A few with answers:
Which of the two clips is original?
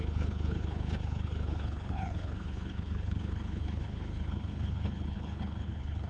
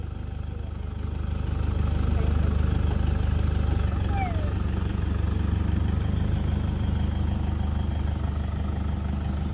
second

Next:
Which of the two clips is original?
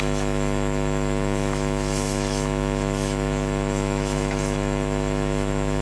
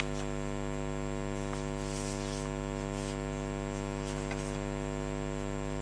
second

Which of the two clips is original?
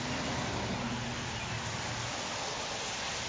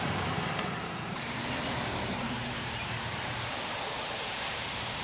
first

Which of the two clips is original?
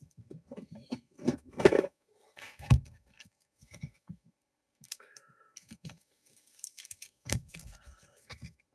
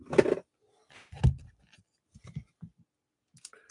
second